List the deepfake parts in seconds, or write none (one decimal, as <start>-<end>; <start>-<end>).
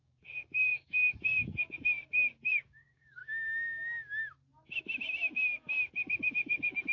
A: 0.0-3.2; 5.9-6.9